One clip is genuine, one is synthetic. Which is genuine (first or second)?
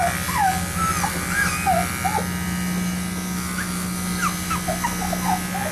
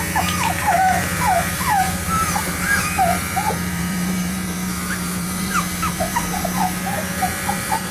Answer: first